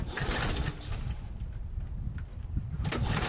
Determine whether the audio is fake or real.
real